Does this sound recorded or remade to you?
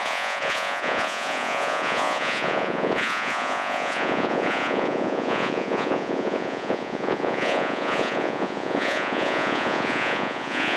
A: remade